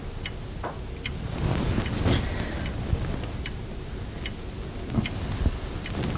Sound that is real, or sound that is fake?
real